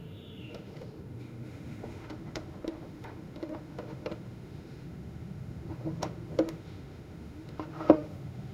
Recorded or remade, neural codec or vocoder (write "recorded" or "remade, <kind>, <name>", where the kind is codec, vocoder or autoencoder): remade, autoencoder, DAC-VAE